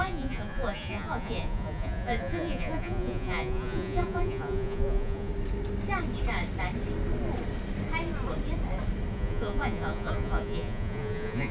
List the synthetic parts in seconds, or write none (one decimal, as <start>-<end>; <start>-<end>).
0.0-5.3; 9.1-11.5

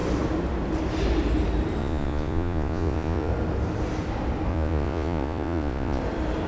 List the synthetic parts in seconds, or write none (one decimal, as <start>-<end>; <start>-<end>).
1.8-3.3; 4.5-6.0

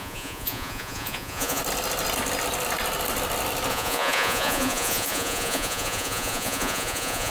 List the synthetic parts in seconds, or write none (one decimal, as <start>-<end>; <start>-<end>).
0.0-1.6; 3.7-7.3

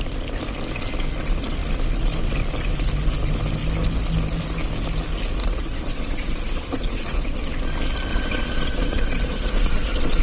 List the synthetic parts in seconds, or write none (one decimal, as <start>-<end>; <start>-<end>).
5.4-7.5; 8.1-10.2

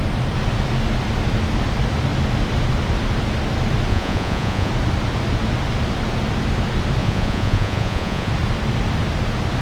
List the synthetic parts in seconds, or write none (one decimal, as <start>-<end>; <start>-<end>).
3.9-4.7; 7.0-8.3

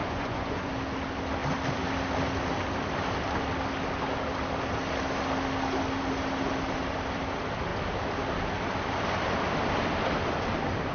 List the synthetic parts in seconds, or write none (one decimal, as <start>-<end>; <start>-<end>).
0.0-0.7